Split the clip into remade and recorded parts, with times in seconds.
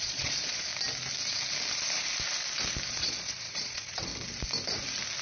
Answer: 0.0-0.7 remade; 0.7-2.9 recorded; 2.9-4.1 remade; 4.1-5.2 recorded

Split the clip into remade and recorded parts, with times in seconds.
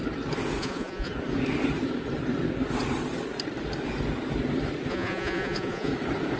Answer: 0.0-0.6 recorded; 0.6-1.1 remade; 1.1-4.9 recorded; 4.9-5.9 remade; 5.9-6.4 recorded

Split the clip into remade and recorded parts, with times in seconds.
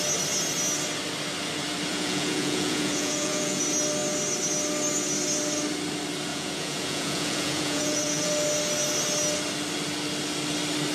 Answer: 0.0-1.9 recorded; 1.9-3.6 remade; 3.6-6.3 recorded; 6.3-8.3 remade; 8.3-10.9 recorded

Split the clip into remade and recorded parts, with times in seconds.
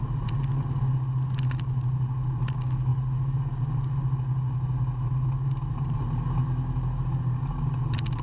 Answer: 0.0-8.2 recorded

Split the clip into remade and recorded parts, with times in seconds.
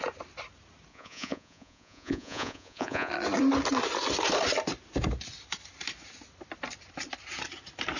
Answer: 0.0-0.9 recorded; 0.9-3.1 remade; 3.1-8.0 recorded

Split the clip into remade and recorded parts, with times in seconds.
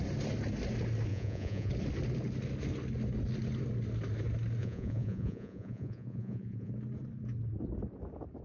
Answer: 0.0-1.1 recorded; 1.1-1.7 remade; 1.7-4.6 recorded; 4.6-6.7 remade; 6.7-8.4 recorded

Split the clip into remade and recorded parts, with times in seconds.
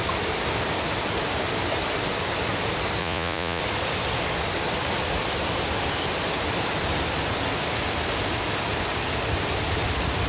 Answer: 0.0-3.0 recorded; 3.0-3.6 remade; 3.6-10.3 recorded